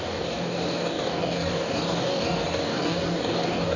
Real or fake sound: fake